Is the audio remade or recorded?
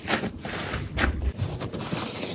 recorded